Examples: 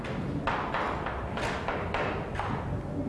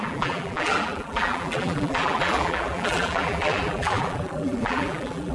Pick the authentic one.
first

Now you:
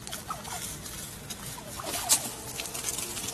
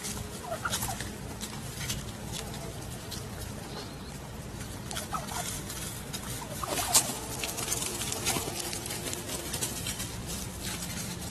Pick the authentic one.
first